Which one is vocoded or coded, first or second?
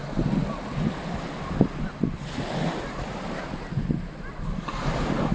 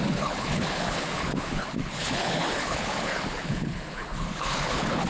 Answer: second